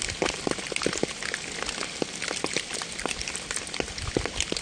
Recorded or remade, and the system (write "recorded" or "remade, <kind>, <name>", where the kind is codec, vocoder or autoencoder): recorded